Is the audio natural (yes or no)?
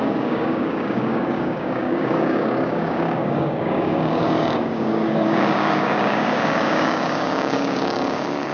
no